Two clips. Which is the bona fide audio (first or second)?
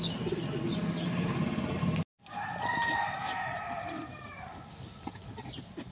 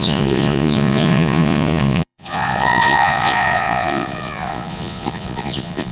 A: first